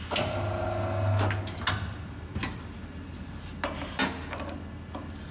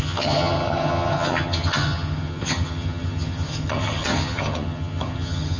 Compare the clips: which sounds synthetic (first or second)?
second